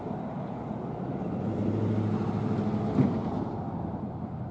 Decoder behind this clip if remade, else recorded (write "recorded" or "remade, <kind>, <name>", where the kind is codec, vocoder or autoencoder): recorded